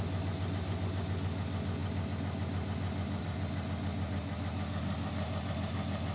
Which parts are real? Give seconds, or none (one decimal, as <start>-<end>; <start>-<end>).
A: 0.0-6.1